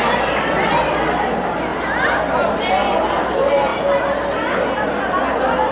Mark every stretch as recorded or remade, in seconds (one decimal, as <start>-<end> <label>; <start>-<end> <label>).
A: 0.0-5.7 recorded